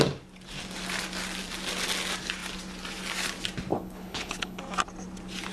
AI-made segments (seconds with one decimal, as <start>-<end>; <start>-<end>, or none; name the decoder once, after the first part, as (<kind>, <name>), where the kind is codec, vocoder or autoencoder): 3.7-4.6 (codec, HILCodec)